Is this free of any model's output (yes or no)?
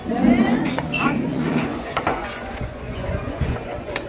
no